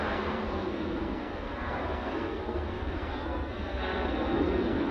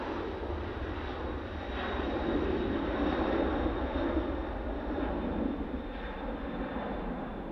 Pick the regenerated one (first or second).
first